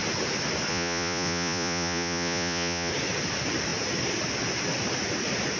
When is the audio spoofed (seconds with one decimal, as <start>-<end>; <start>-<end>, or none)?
0.7-2.9